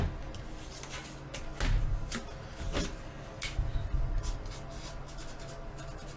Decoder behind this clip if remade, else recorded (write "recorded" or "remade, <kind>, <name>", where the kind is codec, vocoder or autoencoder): recorded